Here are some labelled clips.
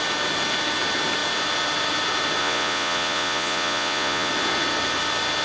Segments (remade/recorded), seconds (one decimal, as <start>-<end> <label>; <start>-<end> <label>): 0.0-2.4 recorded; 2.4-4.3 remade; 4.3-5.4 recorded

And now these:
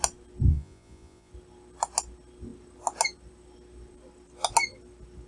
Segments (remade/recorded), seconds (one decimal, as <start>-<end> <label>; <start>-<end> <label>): 0.0-0.5 recorded; 0.5-1.3 remade; 1.3-5.3 recorded

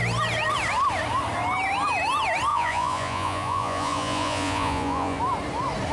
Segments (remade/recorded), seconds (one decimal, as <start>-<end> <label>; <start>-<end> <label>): 0.0-2.5 recorded; 2.5-5.2 remade; 5.2-5.9 recorded